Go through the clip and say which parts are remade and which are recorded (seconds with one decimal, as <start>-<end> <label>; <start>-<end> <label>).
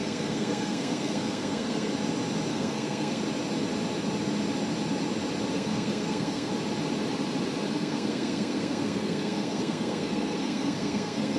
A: 0.0-1.9 remade; 1.9-2.5 recorded; 2.5-3.2 remade; 3.2-5.5 recorded; 5.5-6.5 remade; 6.5-7.7 recorded; 7.7-11.4 remade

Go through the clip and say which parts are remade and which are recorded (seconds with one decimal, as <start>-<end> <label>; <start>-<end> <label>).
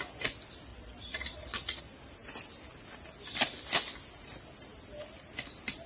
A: 0.0-0.7 recorded; 0.7-1.8 remade; 1.8-5.9 recorded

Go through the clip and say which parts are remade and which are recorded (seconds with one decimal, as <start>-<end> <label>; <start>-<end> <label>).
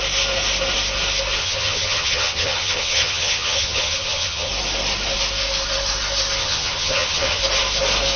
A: 0.0-1.4 recorded; 1.4-4.5 remade; 4.5-6.4 recorded; 6.4-7.4 remade; 7.4-8.2 recorded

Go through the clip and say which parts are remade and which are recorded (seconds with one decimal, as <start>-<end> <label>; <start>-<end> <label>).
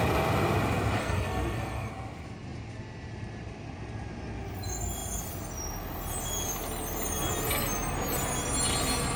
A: 0.0-1.0 recorded; 1.0-1.9 remade; 1.9-9.2 recorded